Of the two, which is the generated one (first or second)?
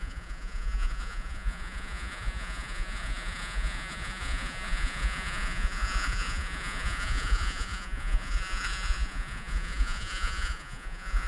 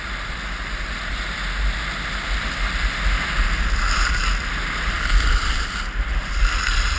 first